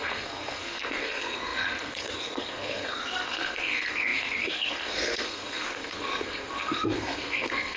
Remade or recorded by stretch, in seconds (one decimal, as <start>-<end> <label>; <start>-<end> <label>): 0.0-7.8 remade